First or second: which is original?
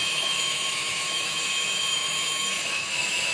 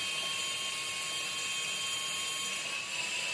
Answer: second